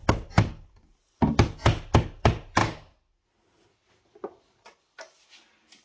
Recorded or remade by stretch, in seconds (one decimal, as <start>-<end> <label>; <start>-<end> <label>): 0.0-2.6 remade; 2.6-3.9 recorded; 3.9-5.8 remade